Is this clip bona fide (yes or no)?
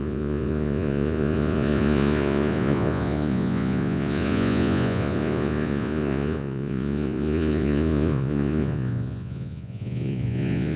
no